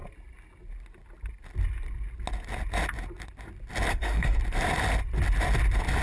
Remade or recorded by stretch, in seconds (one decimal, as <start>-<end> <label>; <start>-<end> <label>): 0.0-3.9 recorded; 3.9-4.4 remade; 4.4-6.0 recorded